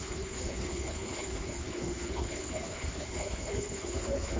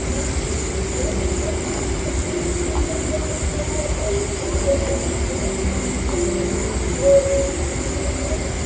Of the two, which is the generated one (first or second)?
first